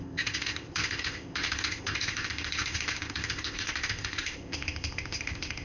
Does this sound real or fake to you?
fake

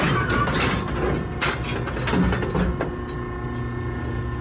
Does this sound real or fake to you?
real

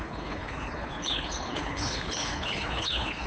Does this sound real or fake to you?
fake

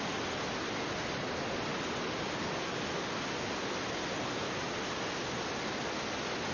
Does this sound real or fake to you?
real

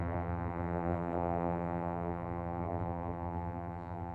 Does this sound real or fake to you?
fake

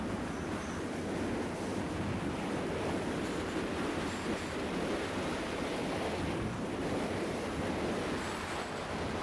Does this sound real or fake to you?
real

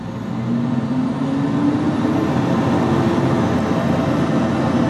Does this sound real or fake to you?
real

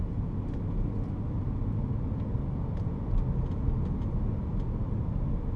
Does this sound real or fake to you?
real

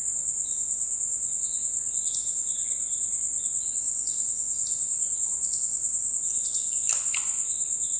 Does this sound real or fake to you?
real